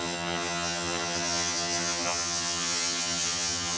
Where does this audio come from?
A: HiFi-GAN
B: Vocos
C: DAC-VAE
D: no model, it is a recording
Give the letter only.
A